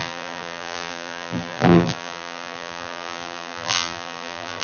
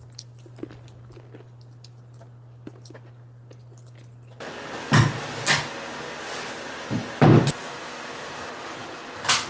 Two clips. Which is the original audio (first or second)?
second